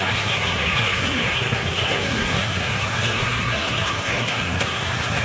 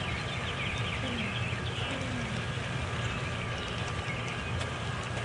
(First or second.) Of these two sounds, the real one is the second